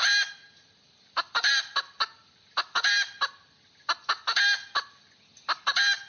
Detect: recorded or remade recorded